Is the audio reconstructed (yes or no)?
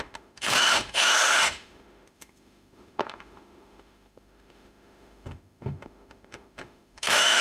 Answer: yes